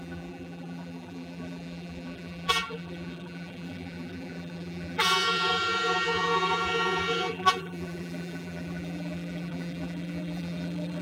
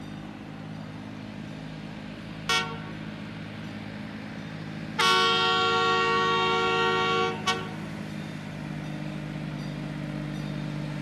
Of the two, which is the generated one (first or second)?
first